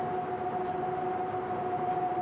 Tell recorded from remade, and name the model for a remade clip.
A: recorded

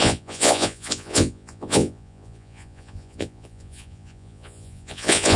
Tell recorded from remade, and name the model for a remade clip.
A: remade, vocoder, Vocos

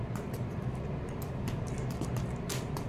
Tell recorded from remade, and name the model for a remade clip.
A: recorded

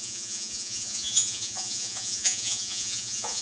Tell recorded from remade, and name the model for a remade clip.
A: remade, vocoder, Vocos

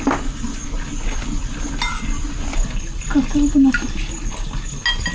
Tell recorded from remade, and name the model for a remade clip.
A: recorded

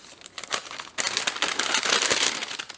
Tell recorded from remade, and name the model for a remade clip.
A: recorded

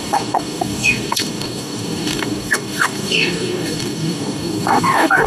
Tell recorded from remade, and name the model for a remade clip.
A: remade, codec, DAC